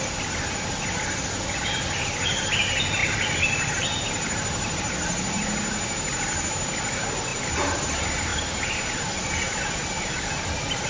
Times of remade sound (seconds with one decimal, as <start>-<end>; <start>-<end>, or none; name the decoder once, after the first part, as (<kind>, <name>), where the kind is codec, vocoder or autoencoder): 7.3-7.9 (vocoder, BigVGAN v2); 8.3-9.2